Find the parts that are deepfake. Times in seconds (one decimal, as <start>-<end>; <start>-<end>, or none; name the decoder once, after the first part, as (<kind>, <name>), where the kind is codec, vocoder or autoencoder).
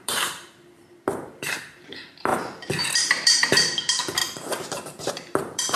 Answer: 0.0-0.6 (vocoder, BigVGAN v2); 1.2-5.8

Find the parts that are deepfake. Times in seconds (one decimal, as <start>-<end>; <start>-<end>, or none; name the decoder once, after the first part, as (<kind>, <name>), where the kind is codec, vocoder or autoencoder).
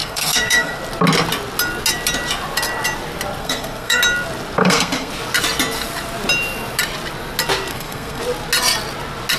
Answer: 0.0-0.8 (codec, SNAC); 3.4-4.0; 4.6-5.1; 7.7-8.2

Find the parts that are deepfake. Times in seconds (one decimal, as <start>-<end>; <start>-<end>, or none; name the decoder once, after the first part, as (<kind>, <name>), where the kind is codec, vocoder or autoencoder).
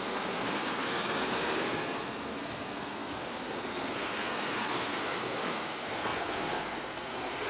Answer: 0.0-7.5 (codec, SNAC)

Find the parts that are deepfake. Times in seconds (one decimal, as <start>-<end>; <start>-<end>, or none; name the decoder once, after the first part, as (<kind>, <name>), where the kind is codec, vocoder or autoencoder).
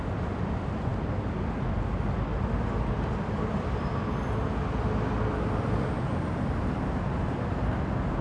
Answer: none